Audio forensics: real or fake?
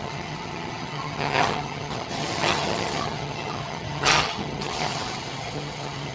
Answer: fake